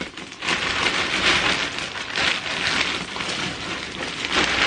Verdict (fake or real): real